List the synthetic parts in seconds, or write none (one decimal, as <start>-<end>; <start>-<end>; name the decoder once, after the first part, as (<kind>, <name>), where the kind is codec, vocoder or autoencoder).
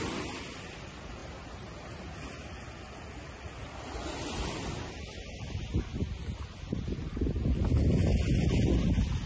none